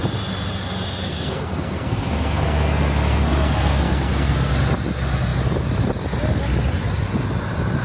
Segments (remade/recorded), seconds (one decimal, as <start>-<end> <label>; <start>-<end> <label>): 0.0-1.0 recorded; 1.0-4.5 remade; 4.5-7.8 recorded